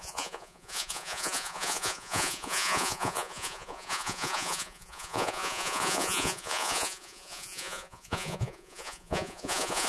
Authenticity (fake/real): fake